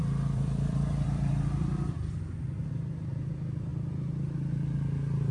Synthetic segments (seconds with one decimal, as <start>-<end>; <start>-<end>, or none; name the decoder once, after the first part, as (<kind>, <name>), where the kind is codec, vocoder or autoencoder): 0.0-2.6 (vocoder, BigVGAN v2)